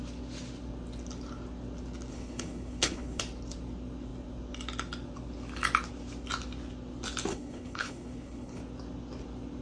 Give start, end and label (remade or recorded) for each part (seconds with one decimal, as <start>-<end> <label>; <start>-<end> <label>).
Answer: 0.0-2.1 recorded; 2.1-3.2 remade; 3.2-7.3 recorded; 7.3-8.6 remade; 8.6-9.6 recorded